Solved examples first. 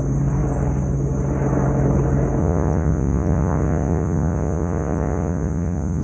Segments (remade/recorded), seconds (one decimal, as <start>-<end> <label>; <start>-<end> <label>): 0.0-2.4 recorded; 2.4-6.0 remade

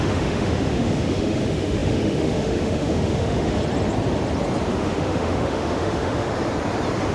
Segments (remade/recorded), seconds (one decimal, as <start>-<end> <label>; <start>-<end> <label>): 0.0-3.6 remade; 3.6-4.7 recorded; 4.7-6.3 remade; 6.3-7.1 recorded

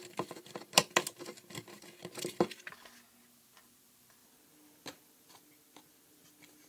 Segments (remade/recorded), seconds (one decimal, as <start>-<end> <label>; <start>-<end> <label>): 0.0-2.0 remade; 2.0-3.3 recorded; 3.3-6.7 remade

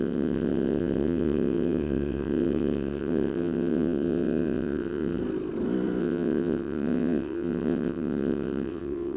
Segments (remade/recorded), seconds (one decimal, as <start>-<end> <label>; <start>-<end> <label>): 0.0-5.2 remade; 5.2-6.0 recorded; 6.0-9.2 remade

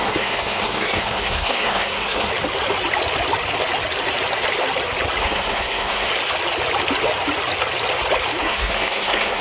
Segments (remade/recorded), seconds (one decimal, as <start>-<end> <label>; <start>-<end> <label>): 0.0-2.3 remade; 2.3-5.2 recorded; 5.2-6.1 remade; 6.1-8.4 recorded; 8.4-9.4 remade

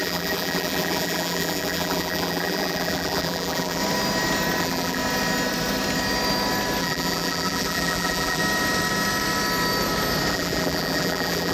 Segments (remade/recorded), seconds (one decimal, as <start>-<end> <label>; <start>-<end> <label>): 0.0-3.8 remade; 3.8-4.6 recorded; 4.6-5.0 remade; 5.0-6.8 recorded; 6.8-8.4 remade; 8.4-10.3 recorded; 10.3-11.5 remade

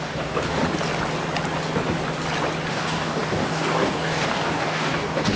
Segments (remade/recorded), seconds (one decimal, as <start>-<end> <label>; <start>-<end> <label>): 0.0-0.6 remade; 0.6-2.7 recorded; 2.7-5.4 remade

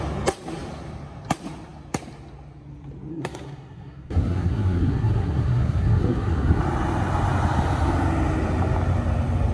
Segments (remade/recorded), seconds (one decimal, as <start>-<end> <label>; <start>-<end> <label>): 0.0-3.1 recorded; 3.1-6.6 remade; 6.6-9.5 recorded